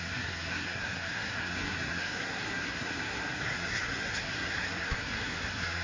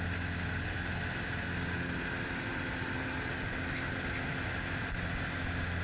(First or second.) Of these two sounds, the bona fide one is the second